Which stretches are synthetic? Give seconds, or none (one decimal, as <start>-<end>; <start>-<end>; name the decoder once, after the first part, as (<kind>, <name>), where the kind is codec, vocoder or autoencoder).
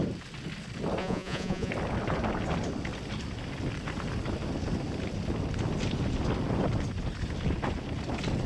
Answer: 1.0-1.7 (vocoder, Vocos)